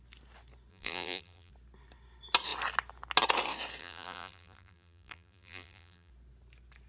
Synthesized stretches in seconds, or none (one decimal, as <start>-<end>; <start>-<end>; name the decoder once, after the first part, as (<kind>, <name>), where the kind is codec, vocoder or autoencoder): 0.7-1.5 (vocoder, BigVGAN v2); 3.8-6.1